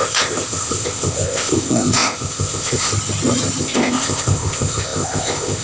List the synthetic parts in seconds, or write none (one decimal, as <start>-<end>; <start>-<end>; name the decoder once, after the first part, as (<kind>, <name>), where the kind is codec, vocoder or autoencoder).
0.0-2.9 (codec, ZipCodec); 3.6-5.6